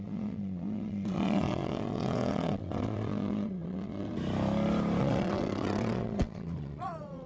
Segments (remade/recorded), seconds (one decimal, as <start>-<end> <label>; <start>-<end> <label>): 0.0-4.1 remade; 4.1-5.0 recorded; 5.0-7.3 remade